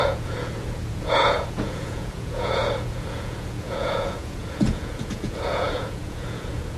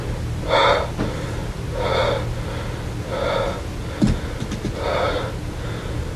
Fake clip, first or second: first